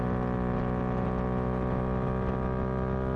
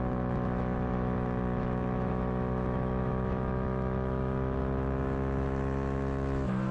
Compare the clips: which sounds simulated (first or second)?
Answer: second